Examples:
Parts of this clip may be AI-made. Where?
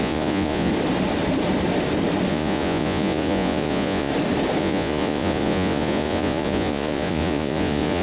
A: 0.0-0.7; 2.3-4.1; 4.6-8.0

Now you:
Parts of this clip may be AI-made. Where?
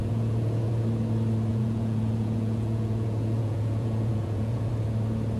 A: 0.0-0.7; 1.5-4.7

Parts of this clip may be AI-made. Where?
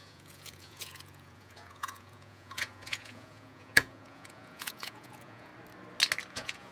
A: 0.0-5.5; 6.3-6.7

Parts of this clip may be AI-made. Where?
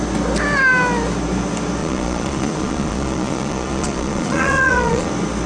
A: 1.8-5.1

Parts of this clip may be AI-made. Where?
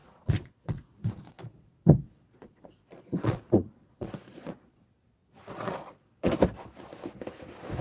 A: 0.0-4.7; 5.2-6.3